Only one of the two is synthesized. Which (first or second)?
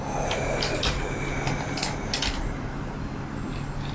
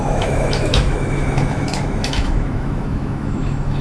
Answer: second